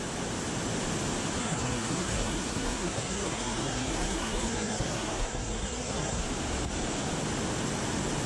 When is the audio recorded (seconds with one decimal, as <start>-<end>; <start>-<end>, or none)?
0.0-1.4; 6.2-8.3